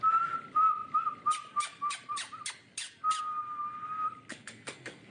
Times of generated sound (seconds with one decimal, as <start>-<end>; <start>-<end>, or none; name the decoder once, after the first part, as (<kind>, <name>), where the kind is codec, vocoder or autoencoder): 4.3-5.1 (codec, SNAC)